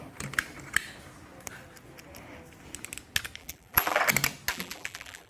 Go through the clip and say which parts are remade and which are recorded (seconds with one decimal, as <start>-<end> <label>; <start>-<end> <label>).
0.0-3.4 recorded; 3.4-4.0 remade; 4.0-4.5 recorded; 4.5-5.3 remade